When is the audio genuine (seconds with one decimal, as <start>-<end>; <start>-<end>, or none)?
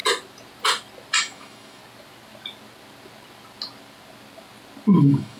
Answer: 0.0-1.2; 1.8-5.0